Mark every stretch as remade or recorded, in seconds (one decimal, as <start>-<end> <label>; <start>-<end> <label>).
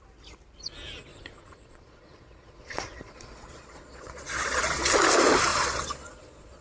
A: 0.0-1.1 recorded; 1.1-4.9 remade; 4.9-5.5 recorded; 5.5-6.6 remade